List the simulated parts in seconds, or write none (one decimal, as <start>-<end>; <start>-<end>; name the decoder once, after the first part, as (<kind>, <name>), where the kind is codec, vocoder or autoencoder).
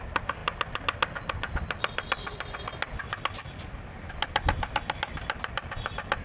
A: none